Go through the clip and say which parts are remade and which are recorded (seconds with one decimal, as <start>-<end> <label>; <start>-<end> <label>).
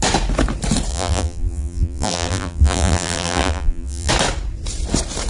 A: 0.0-0.9 recorded; 0.9-4.1 remade; 4.1-5.3 recorded